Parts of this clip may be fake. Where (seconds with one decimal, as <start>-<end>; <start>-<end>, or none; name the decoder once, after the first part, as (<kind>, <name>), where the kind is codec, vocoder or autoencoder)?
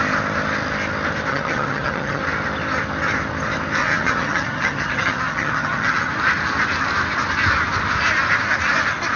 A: 1.3-2.2 (vocoder, HiFi-GAN); 3.8-6.1